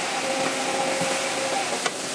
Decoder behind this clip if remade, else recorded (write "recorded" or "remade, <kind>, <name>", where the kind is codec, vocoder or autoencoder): recorded